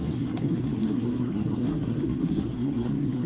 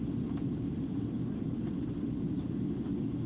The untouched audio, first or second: second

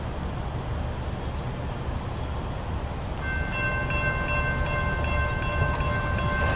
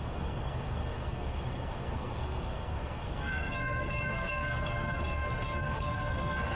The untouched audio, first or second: first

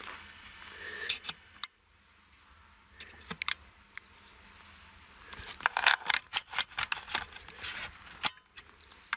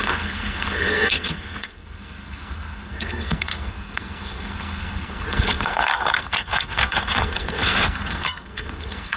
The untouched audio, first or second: first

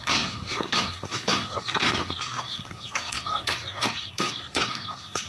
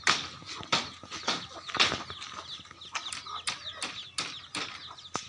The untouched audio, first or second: second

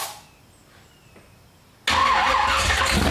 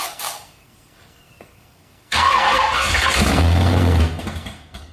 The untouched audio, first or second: first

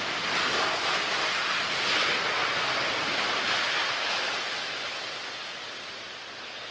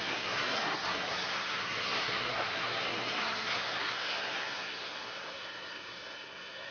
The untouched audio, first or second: first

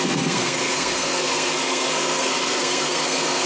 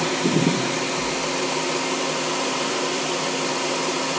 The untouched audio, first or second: second